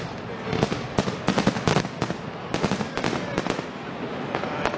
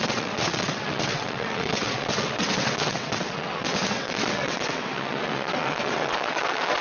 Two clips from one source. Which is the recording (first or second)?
first